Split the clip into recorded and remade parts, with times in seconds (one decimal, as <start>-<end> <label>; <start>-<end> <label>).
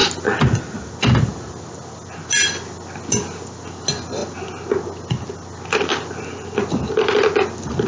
0.0-7.9 recorded